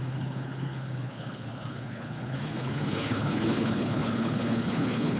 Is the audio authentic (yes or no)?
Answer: no